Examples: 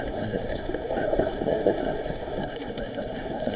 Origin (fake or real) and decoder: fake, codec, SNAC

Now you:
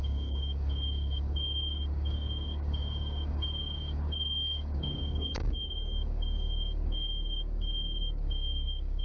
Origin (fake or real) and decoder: fake, codec, DAC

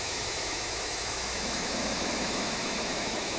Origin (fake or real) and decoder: fake, autoencoder, DAC-VAE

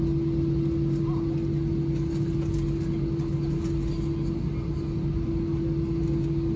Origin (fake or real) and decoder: real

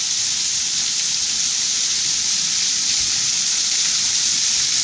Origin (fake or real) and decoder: real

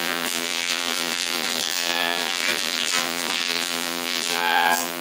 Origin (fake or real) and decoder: fake, vocoder, BigVGAN v2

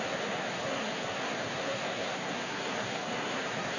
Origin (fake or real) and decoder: fake, codec, SNAC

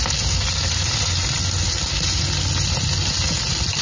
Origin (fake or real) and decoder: real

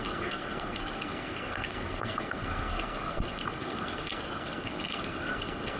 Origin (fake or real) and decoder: fake, codec, SNAC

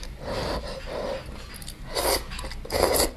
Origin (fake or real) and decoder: real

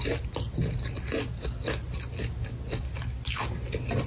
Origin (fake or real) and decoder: real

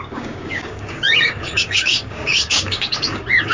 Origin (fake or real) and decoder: fake, codec, DAC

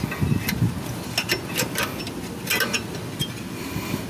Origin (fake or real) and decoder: real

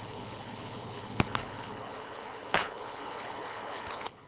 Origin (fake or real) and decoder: fake, codec, HILCodec